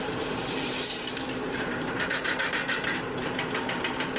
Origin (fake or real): fake